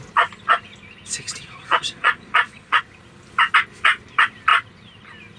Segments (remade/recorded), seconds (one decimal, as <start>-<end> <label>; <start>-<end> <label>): 0.0-1.3 recorded; 1.3-2.8 remade; 2.8-5.4 recorded

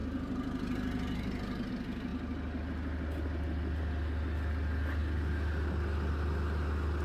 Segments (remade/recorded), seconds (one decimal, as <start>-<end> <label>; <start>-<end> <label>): 0.0-7.0 recorded

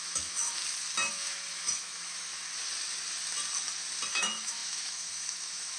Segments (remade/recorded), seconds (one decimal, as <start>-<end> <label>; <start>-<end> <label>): 0.0-0.6 remade; 0.6-1.1 recorded; 1.1-2.3 remade; 2.3-4.1 recorded; 4.1-5.8 remade

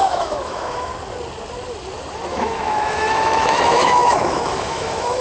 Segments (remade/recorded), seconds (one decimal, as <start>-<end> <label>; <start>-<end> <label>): 0.0-0.9 remade; 0.9-2.3 recorded; 2.3-5.2 remade

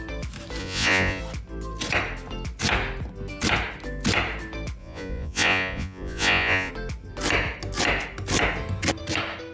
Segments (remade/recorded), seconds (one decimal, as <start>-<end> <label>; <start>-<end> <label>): 0.0-0.6 recorded; 0.6-1.2 remade; 1.2-4.8 recorded; 4.8-6.7 remade; 6.7-9.5 recorded